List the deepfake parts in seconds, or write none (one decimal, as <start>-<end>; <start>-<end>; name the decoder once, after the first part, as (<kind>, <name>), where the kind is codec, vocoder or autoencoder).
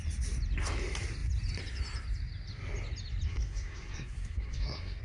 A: 3.3-5.0 (codec, SNAC)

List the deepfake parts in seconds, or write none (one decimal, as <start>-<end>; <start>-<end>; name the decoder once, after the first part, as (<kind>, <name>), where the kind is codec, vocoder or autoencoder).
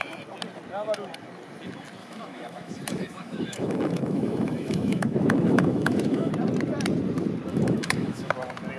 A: 2.0-6.3 (autoencoder, DAC-VAE); 7.5-8.3